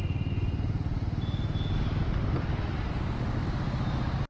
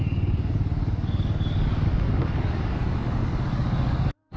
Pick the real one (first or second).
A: first